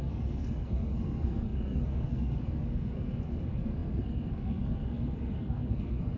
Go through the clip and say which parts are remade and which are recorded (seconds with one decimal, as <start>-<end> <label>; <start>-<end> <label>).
0.0-6.2 remade